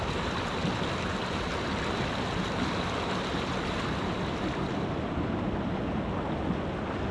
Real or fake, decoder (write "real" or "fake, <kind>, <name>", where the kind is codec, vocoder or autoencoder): real